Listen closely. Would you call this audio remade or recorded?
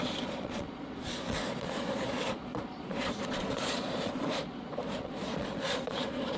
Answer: remade